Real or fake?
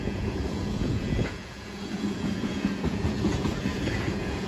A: fake